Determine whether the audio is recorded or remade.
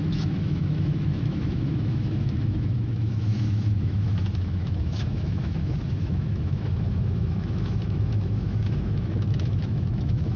remade